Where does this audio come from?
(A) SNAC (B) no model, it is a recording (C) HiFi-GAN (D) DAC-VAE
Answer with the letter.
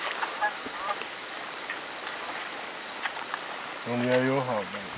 B